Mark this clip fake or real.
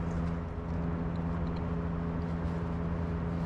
real